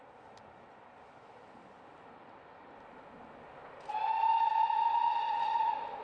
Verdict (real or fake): real